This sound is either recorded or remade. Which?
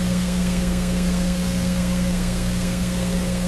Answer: remade